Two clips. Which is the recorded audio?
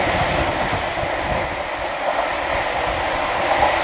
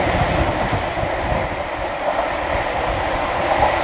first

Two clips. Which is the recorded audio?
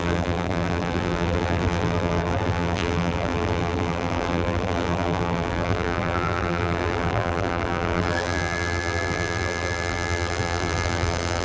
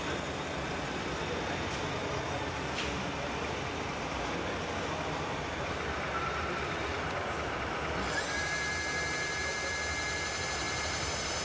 second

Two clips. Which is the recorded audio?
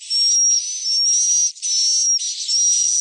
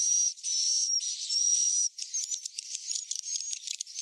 first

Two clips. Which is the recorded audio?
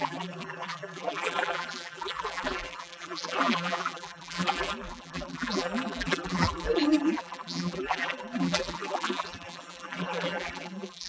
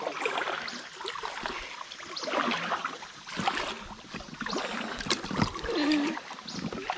second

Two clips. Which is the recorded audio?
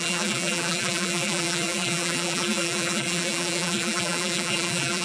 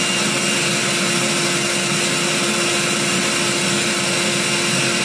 second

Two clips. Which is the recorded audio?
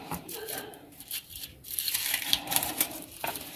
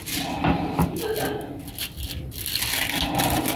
second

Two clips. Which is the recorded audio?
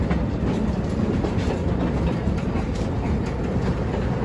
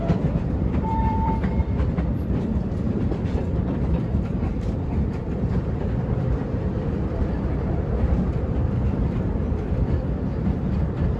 first